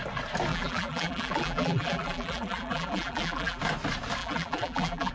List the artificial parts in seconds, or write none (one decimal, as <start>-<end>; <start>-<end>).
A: 0.5-3.6; 4.2-5.1